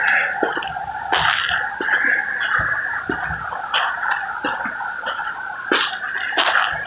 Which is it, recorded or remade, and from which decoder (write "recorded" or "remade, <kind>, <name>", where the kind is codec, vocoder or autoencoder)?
recorded